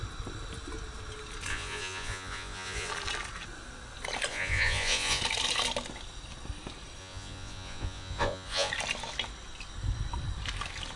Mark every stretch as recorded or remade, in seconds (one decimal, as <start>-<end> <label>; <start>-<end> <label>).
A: 0.0-1.5 recorded; 1.5-2.9 remade; 2.9-4.3 recorded; 4.3-5.2 remade; 5.2-7.0 recorded; 7.0-8.7 remade; 8.7-11.0 recorded